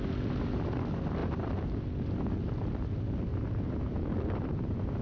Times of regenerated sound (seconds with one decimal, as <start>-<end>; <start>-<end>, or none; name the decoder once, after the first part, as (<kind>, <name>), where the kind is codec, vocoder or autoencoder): 1.2-1.8 (vocoder, BigVGAN v2); 3.3-5.0